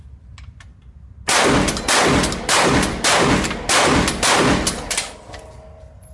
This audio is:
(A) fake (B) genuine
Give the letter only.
B